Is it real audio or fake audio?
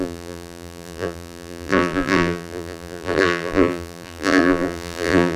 fake